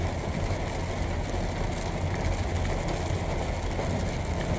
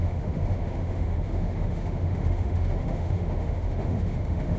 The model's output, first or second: second